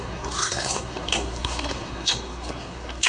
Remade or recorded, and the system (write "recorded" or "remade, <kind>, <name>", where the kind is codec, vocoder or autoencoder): remade, codec, SNAC